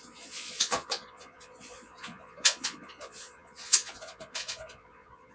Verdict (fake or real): fake